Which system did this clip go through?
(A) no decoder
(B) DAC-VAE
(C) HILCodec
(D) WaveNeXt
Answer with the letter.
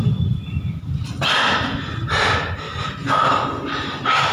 A